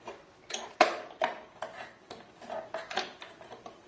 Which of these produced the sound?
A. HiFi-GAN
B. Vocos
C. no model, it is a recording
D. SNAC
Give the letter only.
C